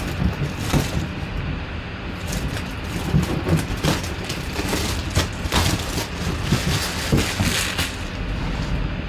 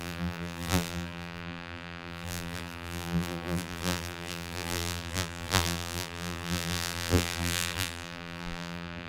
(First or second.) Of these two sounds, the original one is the first